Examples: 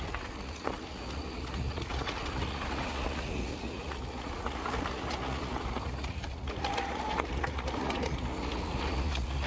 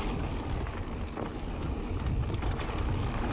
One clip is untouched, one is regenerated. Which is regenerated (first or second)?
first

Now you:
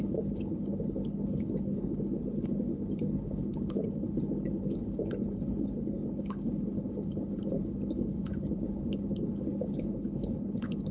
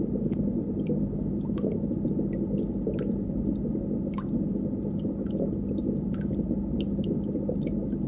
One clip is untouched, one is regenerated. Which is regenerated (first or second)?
first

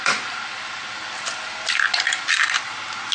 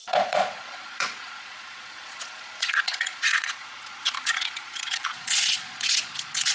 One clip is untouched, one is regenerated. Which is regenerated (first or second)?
second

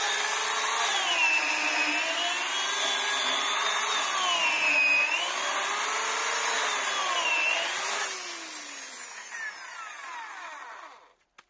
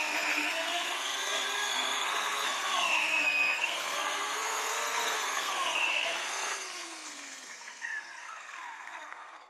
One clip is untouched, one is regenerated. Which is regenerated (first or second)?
second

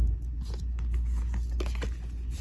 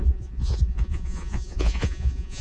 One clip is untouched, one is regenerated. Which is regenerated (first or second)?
second